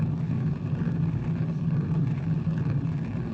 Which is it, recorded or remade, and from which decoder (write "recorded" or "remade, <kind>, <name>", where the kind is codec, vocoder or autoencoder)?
recorded